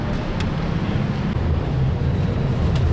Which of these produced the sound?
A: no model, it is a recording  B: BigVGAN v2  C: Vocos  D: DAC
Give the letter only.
A